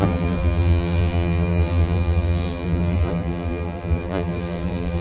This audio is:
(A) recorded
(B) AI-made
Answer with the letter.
B